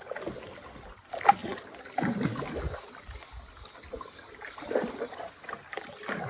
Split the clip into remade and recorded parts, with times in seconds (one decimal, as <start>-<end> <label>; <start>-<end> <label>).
0.0-6.3 recorded